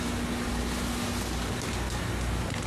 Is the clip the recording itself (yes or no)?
yes